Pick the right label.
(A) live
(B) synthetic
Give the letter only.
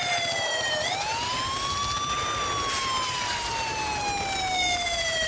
A